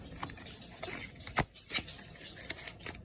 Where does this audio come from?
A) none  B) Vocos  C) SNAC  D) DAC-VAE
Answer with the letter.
A